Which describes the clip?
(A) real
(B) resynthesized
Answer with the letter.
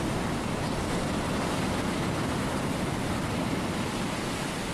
A